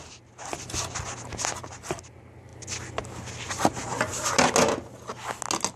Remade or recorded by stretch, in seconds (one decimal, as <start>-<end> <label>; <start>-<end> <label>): 0.0-5.8 recorded